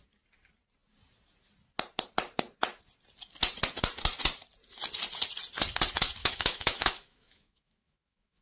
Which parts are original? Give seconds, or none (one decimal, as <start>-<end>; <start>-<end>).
0.0-6.2